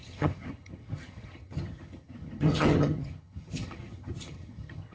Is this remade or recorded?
remade